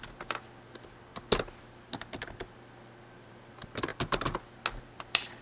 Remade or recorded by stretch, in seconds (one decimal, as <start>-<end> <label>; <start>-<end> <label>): 0.0-5.4 recorded